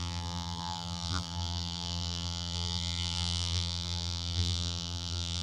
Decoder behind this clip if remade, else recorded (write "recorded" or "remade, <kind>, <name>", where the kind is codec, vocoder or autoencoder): remade, vocoder, BigVGAN v2